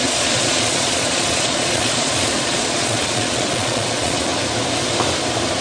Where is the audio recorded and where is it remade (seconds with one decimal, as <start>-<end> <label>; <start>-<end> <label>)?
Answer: 0.0-4.3 remade; 4.3-5.6 recorded